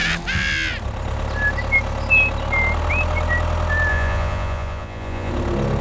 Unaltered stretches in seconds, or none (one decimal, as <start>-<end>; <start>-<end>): 0.0-3.9; 5.3-5.8